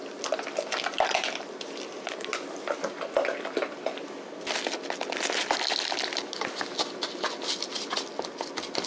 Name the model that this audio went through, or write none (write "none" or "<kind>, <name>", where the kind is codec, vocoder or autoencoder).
none